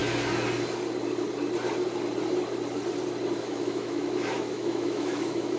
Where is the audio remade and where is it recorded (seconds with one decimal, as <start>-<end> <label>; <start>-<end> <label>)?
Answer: 0.0-3.4 recorded; 3.4-5.6 remade